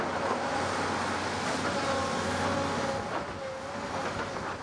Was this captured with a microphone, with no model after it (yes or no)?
yes